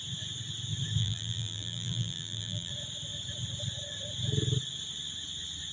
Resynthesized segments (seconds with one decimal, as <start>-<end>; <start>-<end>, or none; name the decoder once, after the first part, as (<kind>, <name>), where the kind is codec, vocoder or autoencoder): 1.0-2.7 (vocoder, BigVGAN v2)